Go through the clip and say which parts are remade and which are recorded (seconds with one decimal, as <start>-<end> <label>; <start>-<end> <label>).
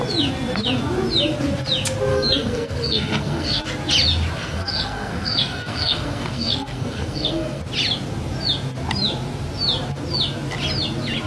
0.0-2.1 recorded; 2.1-3.6 remade; 3.6-4.4 recorded; 4.4-7.6 remade; 7.6-11.3 recorded